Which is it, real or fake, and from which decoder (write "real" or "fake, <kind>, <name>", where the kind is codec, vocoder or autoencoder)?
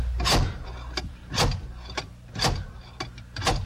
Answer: real